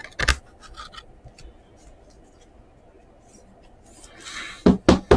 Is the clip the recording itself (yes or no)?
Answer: yes